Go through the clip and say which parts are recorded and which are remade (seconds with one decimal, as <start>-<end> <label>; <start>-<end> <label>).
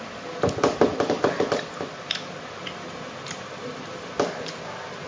0.0-0.9 recorded; 0.9-4.0 remade; 4.0-5.1 recorded